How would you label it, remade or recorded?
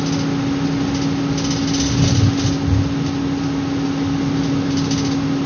recorded